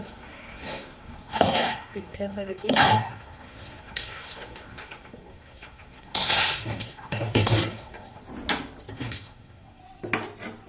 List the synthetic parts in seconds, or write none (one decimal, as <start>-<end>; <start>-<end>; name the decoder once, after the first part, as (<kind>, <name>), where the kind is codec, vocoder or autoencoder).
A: 0.0-8.2 (codec, SNAC); 8.9-9.8